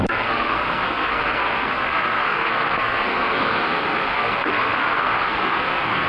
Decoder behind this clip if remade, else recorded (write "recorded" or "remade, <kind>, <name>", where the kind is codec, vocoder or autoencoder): remade, codec, SNAC